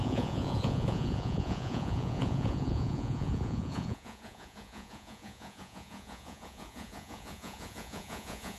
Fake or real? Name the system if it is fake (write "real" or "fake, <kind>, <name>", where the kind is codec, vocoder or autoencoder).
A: fake, vocoder, Vocos